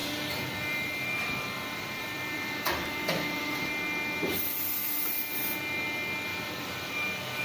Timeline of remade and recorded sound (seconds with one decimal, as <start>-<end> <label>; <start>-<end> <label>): 0.0-3.7 remade; 3.7-6.3 recorded; 6.3-7.4 remade